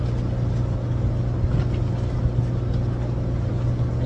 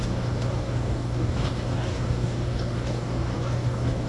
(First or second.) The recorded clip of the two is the first